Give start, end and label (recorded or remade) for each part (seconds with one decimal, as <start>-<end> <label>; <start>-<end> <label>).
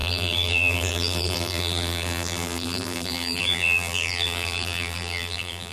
0.0-5.7 remade